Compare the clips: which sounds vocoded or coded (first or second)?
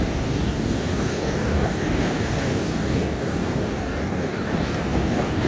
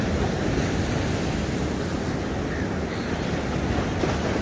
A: first